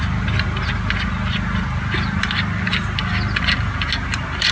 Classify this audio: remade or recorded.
recorded